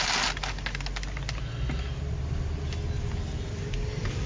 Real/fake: real